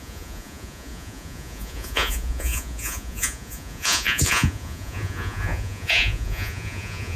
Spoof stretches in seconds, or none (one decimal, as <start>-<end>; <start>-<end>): 0.0-7.2